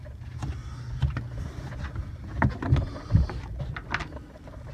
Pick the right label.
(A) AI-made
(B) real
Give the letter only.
B